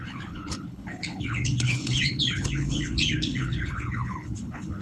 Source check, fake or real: fake